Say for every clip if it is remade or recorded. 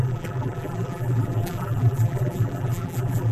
remade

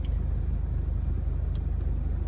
recorded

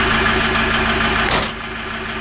recorded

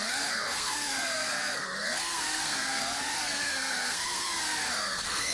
remade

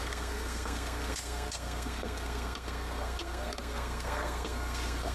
remade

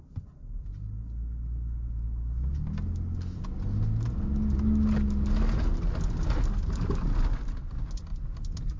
recorded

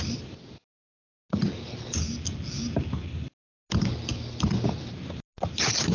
recorded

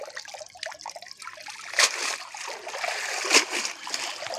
recorded